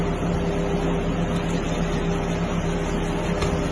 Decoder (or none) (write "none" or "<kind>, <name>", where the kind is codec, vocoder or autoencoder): none